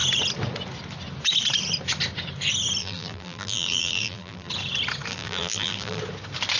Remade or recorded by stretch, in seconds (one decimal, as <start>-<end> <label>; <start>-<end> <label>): 0.0-2.8 recorded; 2.8-4.5 remade; 4.5-5.1 recorded; 5.1-6.0 remade; 6.0-6.6 recorded